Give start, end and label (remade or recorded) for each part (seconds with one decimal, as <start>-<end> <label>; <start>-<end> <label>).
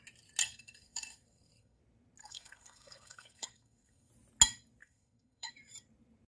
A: 0.0-0.4 recorded; 0.4-1.8 remade; 1.8-2.2 recorded; 2.2-4.1 remade; 4.1-4.8 recorded; 4.8-5.5 remade; 5.5-6.3 recorded